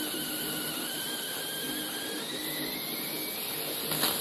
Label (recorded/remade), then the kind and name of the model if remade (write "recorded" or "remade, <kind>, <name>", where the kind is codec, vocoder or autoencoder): recorded